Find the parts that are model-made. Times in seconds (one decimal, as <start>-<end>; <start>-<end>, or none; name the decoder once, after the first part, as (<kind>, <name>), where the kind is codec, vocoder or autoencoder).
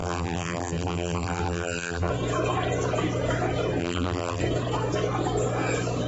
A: 0.0-2.1 (vocoder, BigVGAN v2); 3.8-4.4